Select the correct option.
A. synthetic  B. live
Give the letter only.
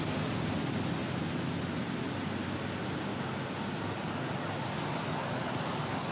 B